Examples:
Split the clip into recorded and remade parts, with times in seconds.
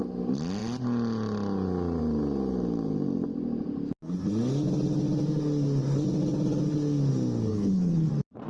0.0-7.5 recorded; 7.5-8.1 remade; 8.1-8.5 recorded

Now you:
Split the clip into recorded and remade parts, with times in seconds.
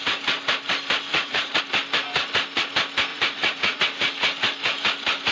0.0-1.1 recorded; 1.1-1.6 remade; 1.6-3.1 recorded; 3.1-3.8 remade; 3.8-5.3 recorded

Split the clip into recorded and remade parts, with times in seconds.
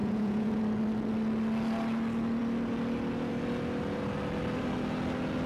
0.0-0.6 remade; 0.6-5.5 recorded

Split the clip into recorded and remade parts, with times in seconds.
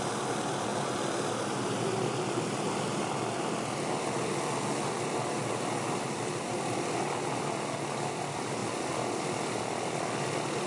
0.0-10.7 recorded